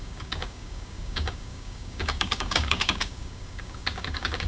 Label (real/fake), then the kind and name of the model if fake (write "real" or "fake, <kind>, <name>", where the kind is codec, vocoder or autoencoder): fake, codec, DAC